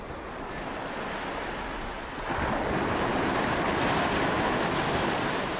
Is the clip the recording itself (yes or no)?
yes